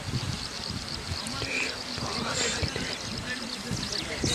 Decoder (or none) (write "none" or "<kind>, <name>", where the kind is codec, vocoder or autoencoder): none